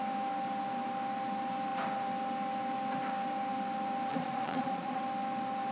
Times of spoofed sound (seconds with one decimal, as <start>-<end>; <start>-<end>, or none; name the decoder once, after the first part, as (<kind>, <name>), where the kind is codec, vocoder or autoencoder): 4.1-5.0 (vocoder, Vocos)